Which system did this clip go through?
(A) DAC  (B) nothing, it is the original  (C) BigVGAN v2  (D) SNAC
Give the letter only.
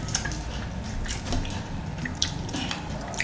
B